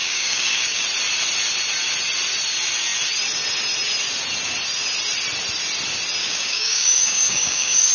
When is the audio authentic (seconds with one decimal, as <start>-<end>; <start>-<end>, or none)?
0.8-6.2